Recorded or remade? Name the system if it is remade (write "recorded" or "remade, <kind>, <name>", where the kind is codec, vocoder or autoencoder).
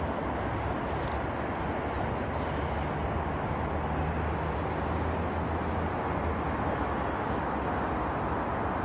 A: recorded